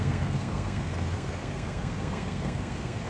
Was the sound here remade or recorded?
remade